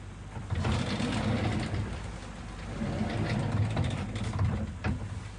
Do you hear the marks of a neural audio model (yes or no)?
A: no